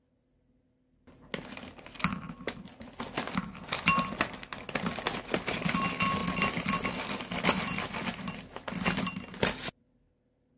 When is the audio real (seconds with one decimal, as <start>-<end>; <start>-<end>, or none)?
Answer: 0.0-10.6